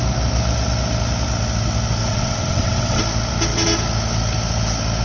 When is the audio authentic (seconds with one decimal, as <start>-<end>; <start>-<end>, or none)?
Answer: 0.0-2.0; 3.0-5.0